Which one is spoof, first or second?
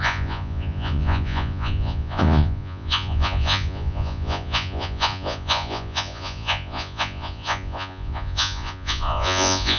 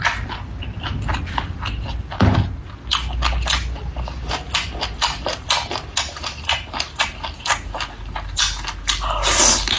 first